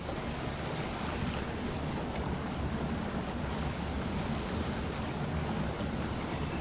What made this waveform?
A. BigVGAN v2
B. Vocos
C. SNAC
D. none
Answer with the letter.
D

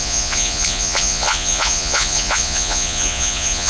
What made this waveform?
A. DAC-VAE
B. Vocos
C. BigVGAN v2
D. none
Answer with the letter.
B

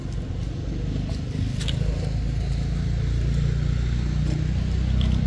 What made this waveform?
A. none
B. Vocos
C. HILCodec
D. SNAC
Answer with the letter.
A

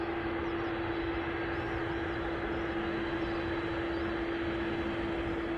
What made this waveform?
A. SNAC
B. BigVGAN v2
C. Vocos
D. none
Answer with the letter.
D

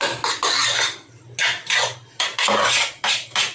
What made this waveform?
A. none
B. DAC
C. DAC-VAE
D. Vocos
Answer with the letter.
A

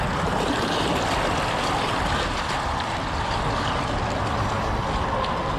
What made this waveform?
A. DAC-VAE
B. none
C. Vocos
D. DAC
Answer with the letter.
B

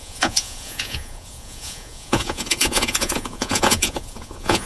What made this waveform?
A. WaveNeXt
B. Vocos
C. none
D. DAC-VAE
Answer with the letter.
B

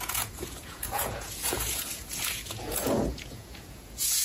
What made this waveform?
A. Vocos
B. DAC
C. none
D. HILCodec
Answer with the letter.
A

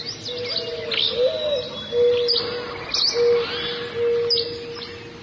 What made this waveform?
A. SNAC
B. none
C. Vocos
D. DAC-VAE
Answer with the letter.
B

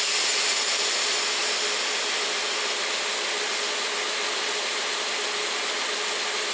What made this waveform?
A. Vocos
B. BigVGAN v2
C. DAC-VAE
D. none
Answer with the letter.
D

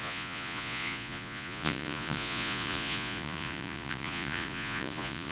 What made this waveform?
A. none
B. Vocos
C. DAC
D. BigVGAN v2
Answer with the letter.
B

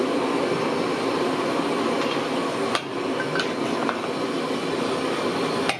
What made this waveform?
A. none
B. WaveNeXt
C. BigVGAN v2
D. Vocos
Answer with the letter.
A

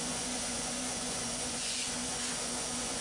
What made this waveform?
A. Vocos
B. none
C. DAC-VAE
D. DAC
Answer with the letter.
A